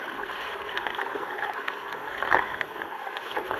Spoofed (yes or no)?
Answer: yes